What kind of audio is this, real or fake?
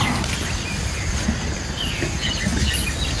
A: real